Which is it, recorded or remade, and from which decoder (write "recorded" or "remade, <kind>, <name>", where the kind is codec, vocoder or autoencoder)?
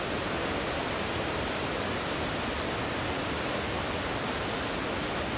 recorded